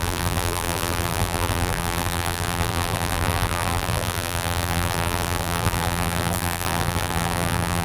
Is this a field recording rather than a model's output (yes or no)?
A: no